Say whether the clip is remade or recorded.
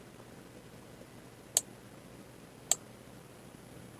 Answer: recorded